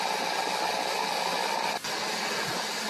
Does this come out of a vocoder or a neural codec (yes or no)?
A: no